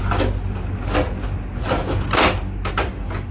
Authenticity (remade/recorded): recorded